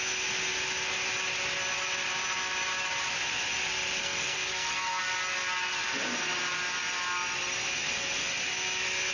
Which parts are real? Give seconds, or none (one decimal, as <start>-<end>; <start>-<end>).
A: 0.0-4.0; 5.0-9.1